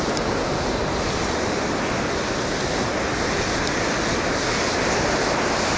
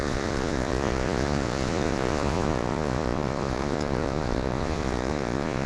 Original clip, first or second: first